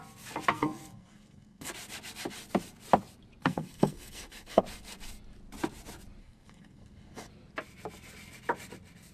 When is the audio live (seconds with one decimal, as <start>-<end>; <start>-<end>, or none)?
0.0-0.5; 1.7-3.4; 4.6-6.2; 7.3-9.1

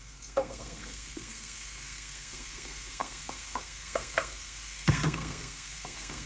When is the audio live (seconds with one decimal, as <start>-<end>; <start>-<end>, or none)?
none

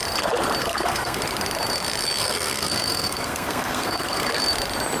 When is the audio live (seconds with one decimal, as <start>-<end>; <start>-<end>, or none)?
0.0-0.6; 1.2-2.2; 4.3-5.0

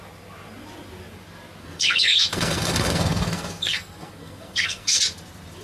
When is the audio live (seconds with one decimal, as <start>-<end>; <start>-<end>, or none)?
0.0-1.6; 5.0-5.6

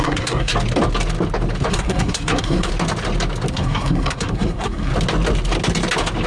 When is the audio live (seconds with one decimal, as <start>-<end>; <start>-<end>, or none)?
0.5-1.7; 2.7-3.5; 4.9-6.3

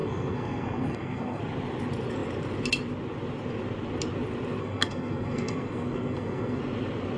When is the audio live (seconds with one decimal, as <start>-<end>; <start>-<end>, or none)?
1.4-4.6; 6.6-7.2

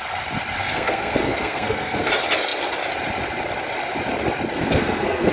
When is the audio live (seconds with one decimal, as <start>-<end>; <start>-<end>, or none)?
0.0-0.6; 2.1-4.5